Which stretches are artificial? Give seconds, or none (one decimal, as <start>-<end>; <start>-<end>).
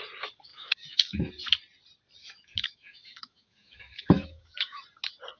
0.5-1.3; 2.2-4.8